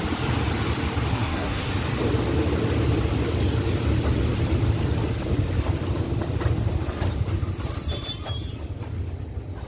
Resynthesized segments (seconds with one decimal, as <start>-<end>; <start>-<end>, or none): 1.1-1.7